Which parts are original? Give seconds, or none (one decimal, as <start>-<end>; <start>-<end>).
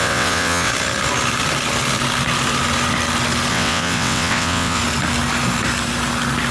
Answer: 0.7-3.5; 4.8-6.5